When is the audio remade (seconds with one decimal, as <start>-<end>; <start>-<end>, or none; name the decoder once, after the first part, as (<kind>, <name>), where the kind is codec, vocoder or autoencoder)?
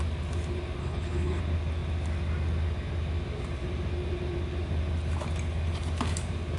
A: 0.8-1.4 (codec, HILCodec)